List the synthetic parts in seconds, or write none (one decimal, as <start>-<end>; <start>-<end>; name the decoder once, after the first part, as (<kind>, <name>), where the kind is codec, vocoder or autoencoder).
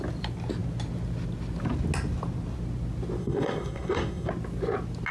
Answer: 3.2-4.3 (codec, SNAC)